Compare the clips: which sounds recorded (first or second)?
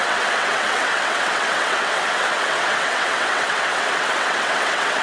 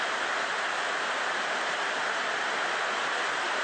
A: second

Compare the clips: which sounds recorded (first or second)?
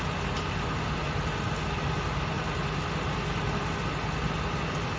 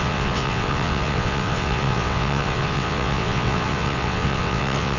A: first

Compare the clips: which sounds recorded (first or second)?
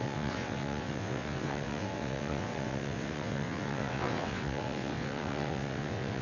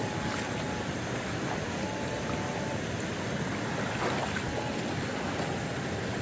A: second